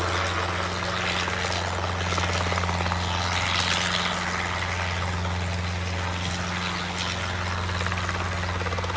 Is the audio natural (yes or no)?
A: yes